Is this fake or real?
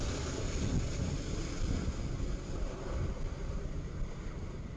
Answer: real